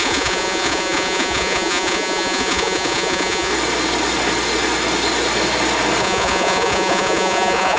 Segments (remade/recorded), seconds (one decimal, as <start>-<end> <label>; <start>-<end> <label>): 0.0-3.5 remade; 3.5-6.0 recorded; 6.0-7.8 remade

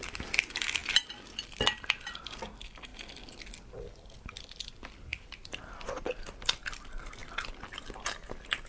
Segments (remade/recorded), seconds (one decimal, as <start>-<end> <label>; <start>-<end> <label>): 0.0-5.1 recorded; 5.1-6.1 remade; 6.1-7.2 recorded; 7.2-7.8 remade; 7.8-8.7 recorded